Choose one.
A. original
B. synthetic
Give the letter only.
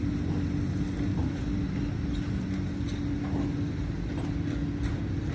A